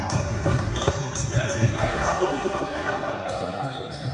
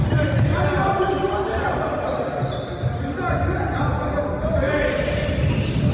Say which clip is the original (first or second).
second